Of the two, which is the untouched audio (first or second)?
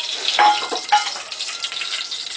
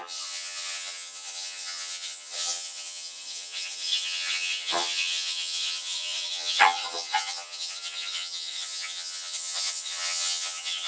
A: first